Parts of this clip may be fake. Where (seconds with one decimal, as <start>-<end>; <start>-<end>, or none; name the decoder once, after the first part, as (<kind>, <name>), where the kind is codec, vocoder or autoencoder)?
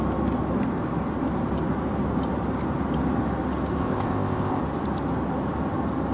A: 3.8-4.6 (codec, ZipCodec)